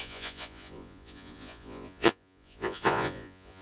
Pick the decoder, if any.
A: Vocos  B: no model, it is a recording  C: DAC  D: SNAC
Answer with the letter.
A